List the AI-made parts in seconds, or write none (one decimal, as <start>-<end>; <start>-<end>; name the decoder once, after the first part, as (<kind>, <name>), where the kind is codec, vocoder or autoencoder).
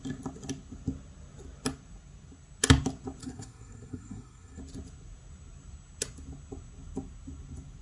3.2-4.6 (codec, SNAC)